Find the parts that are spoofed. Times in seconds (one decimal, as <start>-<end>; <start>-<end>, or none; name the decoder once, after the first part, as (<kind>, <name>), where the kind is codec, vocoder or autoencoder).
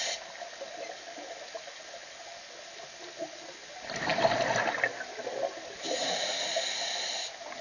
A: none